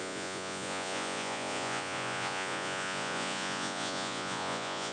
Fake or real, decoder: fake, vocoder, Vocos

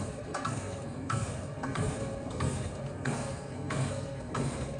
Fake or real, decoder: fake, codec, SNAC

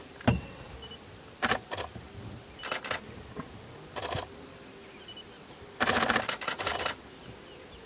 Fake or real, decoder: real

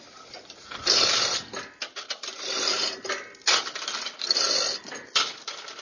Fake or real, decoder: real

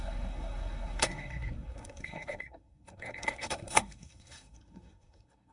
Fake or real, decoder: fake, codec, SNAC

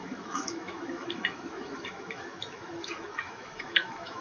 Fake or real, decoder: fake, autoencoder, DAC-VAE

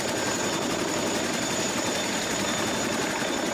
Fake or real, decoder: real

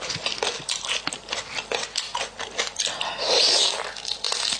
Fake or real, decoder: real